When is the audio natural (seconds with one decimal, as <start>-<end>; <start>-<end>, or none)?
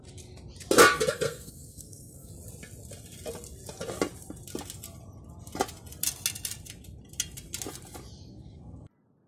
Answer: 0.0-0.9; 2.3-8.3; 8.9-9.3